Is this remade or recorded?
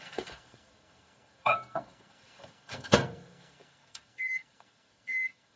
remade